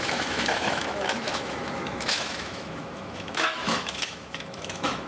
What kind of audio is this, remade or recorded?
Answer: remade